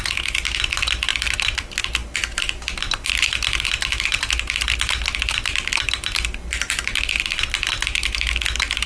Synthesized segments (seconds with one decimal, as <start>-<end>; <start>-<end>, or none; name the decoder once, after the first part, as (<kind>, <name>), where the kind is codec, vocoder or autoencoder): none